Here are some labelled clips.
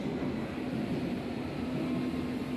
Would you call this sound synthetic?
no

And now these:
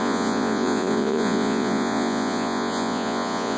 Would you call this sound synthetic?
yes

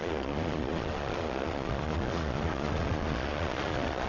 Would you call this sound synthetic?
yes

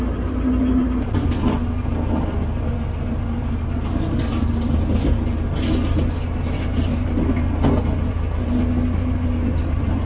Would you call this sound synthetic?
no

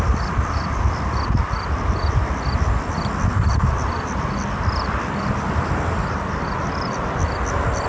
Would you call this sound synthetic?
no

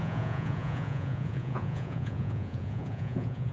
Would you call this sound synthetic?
yes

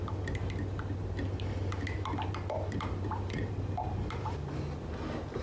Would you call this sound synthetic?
no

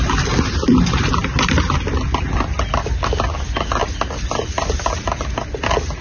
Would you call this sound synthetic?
no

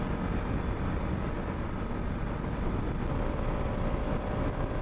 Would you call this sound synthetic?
no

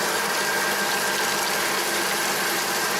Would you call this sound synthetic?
no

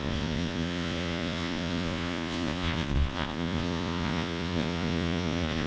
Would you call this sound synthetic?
yes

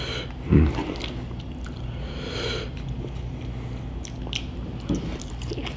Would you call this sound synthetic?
no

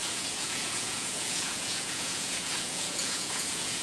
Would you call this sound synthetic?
yes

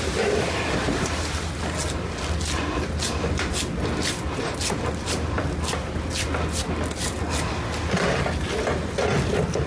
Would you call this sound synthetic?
no